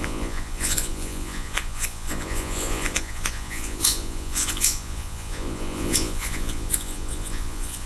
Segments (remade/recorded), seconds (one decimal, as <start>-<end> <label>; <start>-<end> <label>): 0.0-7.9 remade